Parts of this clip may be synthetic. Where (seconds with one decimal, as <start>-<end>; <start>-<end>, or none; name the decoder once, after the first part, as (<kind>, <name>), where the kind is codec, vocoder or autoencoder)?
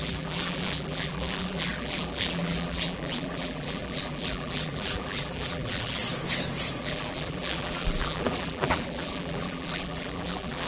0.0-6.0 (vocoder, BigVGAN v2); 6.8-10.7